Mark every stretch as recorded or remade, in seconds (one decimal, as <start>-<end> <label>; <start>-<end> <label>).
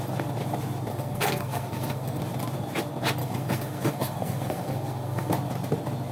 0.0-0.9 recorded; 0.9-2.2 remade; 2.2-3.2 recorded; 3.2-5.3 remade; 5.3-6.1 recorded